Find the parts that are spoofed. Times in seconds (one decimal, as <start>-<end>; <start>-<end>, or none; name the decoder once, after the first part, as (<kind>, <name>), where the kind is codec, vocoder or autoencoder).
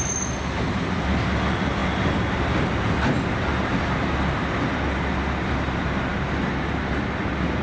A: none